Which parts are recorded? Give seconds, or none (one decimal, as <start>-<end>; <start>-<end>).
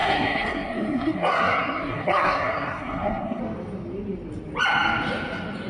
3.4-5.7